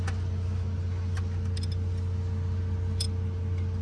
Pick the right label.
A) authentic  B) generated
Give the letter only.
A